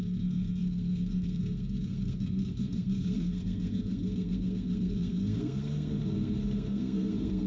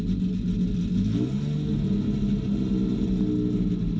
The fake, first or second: first